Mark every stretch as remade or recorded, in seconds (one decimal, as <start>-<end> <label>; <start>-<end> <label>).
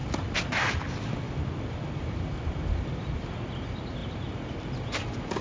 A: 0.0-3.2 remade; 3.2-4.0 recorded; 4.0-5.4 remade